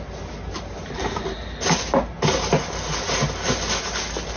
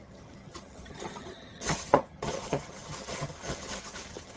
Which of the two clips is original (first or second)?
first